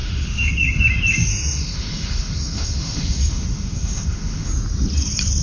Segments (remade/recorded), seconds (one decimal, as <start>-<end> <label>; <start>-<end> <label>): 0.0-0.5 remade; 0.5-1.3 recorded; 1.3-4.5 remade; 4.5-5.4 recorded